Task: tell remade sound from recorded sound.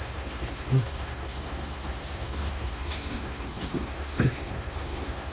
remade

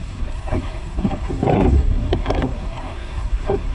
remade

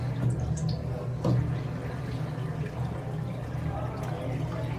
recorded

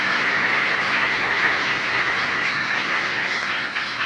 remade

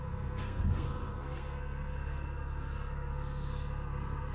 remade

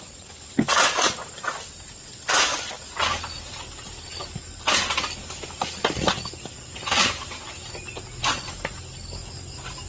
recorded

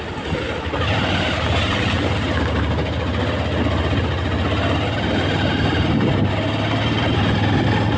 recorded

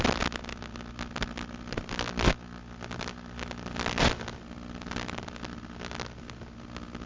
recorded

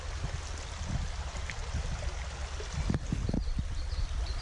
recorded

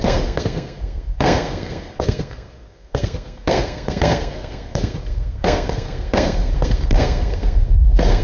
remade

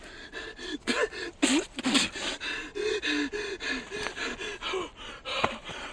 recorded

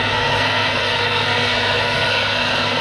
remade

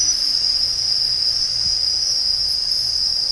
recorded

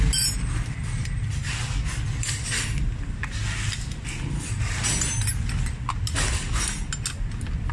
recorded